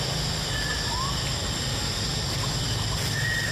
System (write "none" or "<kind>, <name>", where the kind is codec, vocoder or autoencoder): none